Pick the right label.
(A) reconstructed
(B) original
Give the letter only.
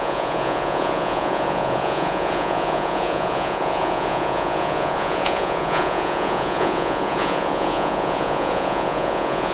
A